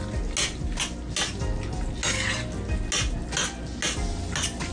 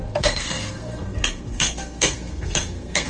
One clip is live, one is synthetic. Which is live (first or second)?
first